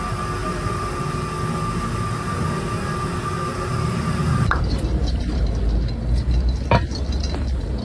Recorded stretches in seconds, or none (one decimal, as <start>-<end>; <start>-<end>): 0.0-0.4; 1.1-3.5; 5.5-7.8